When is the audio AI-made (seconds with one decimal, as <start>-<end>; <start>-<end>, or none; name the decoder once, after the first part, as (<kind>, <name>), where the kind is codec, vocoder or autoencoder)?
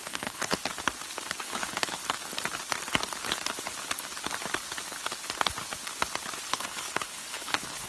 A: 0.0-0.6 (codec, HILCodec); 1.4-2.0; 6.5-7.9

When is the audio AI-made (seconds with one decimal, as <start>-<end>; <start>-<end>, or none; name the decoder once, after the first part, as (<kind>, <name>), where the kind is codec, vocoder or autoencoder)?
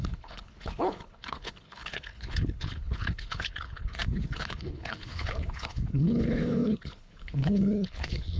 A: 0.0-8.4 (codec, HILCodec)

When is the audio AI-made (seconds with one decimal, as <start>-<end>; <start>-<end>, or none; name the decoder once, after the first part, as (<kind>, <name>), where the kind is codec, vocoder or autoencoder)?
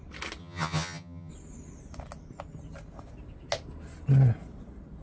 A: 0.4-1.3 (vocoder, HiFi-GAN)